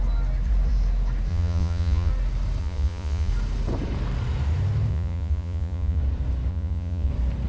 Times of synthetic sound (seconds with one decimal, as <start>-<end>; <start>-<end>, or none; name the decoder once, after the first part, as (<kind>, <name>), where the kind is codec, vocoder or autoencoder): 1.3-2.1 (vocoder, Vocos); 2.6-3.3; 4.9-6.0; 6.5-7.1